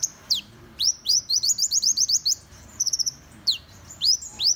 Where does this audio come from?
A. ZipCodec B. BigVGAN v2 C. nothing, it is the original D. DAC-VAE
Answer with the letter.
B